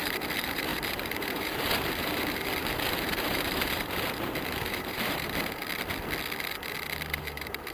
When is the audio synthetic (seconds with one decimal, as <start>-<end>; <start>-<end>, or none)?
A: 0.0-5.6; 7.2-7.7